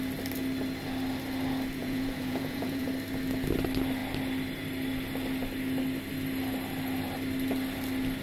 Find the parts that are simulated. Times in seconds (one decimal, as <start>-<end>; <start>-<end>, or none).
1.8-2.9